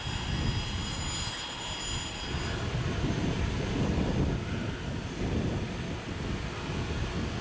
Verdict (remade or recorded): recorded